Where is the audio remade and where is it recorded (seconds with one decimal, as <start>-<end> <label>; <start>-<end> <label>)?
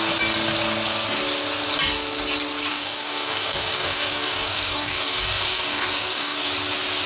0.0-2.7 recorded; 2.7-6.5 remade; 6.5-7.1 recorded